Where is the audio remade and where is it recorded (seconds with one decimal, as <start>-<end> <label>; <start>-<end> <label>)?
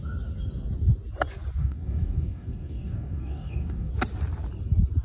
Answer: 0.0-1.6 recorded; 1.6-3.9 remade; 3.9-5.0 recorded